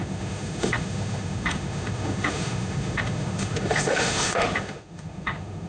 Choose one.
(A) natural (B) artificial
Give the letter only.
B